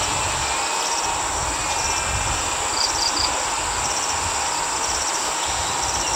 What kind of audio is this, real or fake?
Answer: real